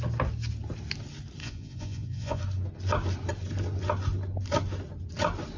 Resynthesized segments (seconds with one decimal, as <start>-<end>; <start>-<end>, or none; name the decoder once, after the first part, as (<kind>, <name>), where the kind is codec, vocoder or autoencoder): 1.4-2.4 (vocoder, Vocos)